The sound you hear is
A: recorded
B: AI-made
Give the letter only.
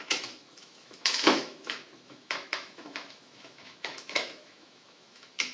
B